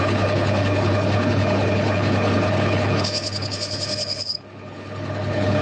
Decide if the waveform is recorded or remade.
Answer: remade